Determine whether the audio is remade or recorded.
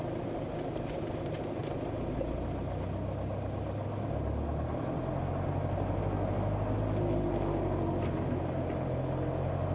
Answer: recorded